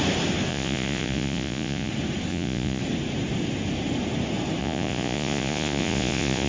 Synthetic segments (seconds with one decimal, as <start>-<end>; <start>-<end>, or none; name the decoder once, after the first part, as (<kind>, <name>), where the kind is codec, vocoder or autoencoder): 0.5-1.9 (vocoder, Vocos); 2.3-2.8; 4.6-6.5